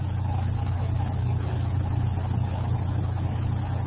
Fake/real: real